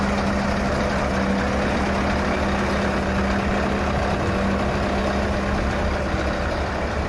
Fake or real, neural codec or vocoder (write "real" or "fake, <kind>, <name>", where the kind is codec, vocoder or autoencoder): real